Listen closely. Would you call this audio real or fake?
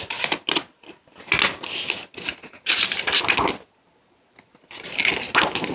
real